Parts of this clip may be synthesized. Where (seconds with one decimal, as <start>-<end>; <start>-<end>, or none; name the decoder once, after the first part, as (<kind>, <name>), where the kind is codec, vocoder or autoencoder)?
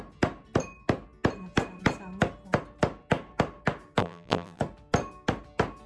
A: 4.0-4.6 (vocoder, BigVGAN v2)